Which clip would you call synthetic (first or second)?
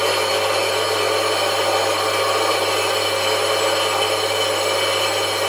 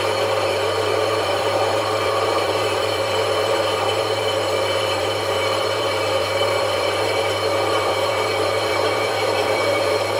second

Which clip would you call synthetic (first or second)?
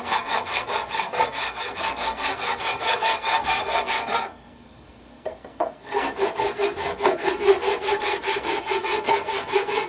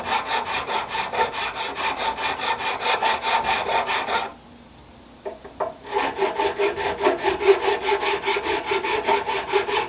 first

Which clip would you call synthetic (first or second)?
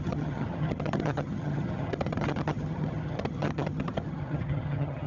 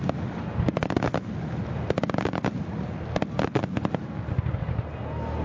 first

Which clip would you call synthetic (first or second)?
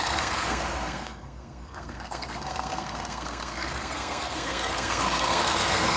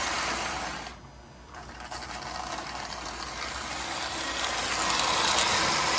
first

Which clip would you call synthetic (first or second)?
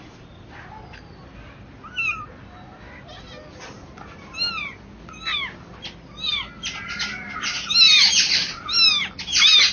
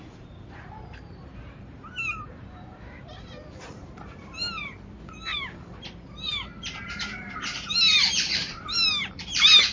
second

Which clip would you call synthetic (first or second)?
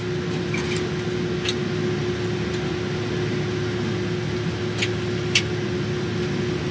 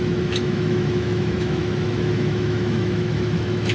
second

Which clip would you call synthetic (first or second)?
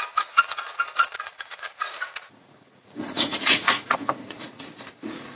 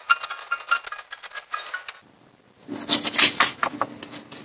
first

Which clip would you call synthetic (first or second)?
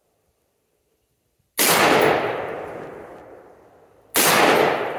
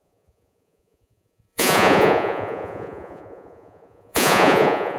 second